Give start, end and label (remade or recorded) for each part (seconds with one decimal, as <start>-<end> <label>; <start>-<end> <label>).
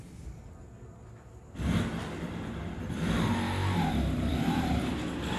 0.0-4.3 recorded; 4.3-4.9 remade; 4.9-5.4 recorded